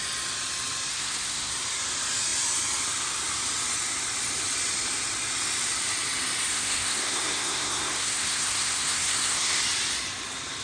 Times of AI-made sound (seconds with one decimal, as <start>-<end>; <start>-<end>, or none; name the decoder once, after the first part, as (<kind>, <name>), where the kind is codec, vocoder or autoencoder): 0.9-1.5 (codec, SNAC); 6.5-9.6